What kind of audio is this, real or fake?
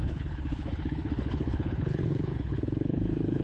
fake